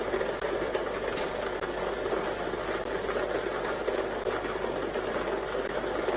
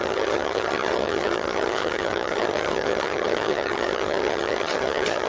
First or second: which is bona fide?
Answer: first